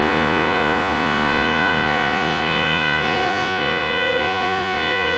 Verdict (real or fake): fake